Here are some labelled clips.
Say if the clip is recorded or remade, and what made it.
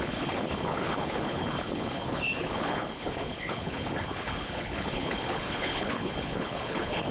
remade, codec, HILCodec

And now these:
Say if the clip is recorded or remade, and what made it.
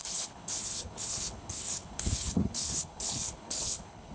remade, codec, HILCodec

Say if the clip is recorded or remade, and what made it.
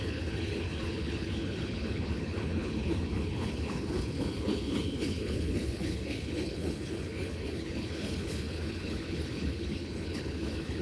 remade, codec, HILCodec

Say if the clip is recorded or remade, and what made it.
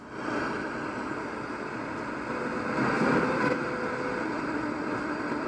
recorded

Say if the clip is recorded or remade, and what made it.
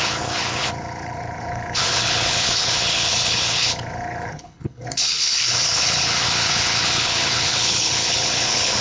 remade, codec, HILCodec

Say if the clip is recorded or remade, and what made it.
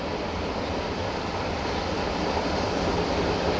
recorded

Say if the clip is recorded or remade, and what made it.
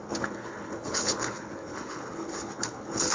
remade, codec, HILCodec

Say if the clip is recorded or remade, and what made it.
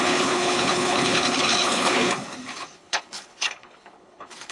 remade, codec, HILCodec